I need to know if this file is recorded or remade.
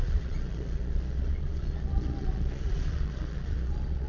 remade